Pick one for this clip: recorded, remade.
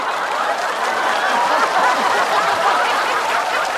recorded